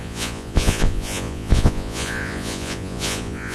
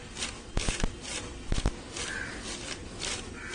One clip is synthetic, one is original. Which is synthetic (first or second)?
first